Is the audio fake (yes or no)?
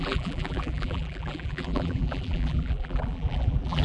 yes